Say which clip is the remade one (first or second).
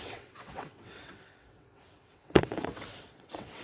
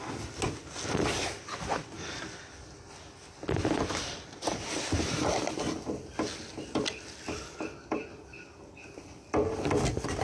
first